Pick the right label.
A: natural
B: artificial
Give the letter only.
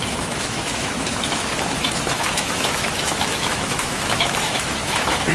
B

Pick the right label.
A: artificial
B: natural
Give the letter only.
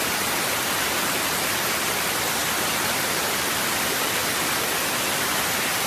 B